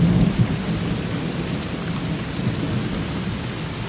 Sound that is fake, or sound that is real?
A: real